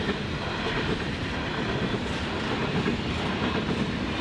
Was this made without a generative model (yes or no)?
no